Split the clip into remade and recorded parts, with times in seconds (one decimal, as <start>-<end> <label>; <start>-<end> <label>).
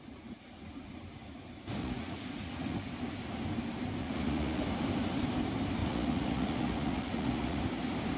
0.0-1.8 recorded; 1.8-2.8 remade; 2.8-4.0 recorded; 4.0-4.6 remade; 4.6-5.8 recorded; 5.8-7.6 remade; 7.6-8.2 recorded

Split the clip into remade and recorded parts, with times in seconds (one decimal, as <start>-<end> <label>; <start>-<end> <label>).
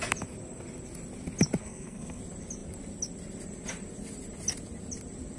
0.0-1.6 recorded; 1.6-2.2 remade; 2.2-5.4 recorded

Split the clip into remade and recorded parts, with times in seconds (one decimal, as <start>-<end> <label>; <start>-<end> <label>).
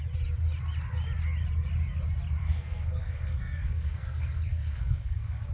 0.0-2.4 recorded; 2.4-5.5 remade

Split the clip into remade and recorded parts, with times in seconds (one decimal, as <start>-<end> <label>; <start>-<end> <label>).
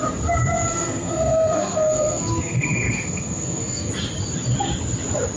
0.0-0.7 recorded; 0.7-3.9 remade; 3.9-5.4 recorded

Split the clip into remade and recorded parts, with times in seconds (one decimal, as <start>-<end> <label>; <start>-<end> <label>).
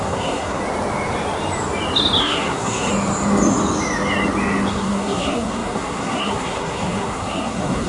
0.0-0.6 remade; 0.6-2.2 recorded; 2.2-2.9 remade; 2.9-4.7 recorded; 4.7-7.9 remade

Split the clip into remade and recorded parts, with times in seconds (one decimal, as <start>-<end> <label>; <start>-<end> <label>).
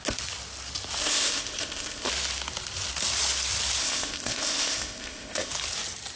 0.0-1.0 recorded; 1.0-2.1 remade; 2.1-3.8 recorded; 3.8-5.5 remade; 5.5-6.2 recorded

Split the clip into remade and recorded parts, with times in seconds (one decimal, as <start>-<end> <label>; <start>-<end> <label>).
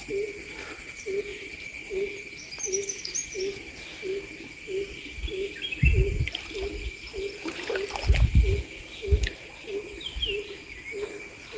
0.0-11.6 recorded